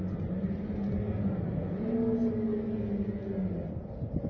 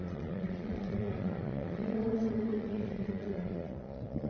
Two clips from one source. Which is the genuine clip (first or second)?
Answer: first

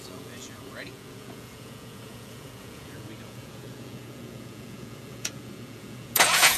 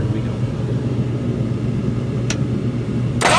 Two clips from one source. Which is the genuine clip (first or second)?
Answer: second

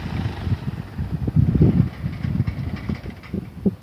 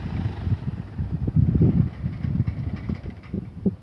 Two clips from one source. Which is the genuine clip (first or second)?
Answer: first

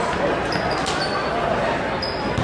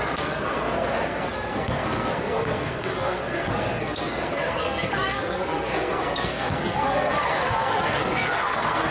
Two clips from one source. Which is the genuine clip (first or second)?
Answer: first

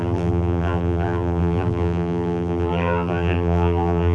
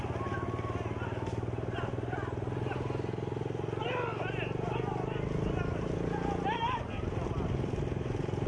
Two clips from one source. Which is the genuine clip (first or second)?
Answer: second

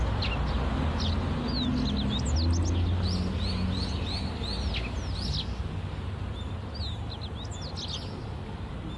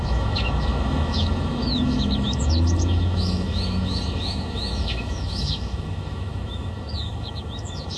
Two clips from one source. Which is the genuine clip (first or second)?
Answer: first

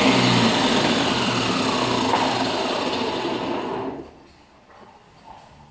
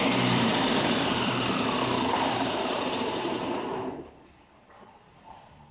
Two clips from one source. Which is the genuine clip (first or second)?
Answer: first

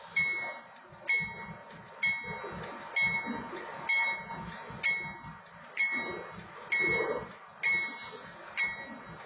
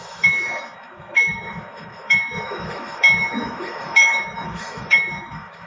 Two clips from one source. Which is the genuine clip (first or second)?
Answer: first